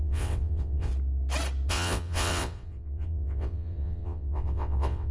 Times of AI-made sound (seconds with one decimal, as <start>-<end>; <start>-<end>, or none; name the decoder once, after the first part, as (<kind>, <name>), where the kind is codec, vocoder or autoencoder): 0.0-0.9 (vocoder, WaveNeXt); 1.7-5.1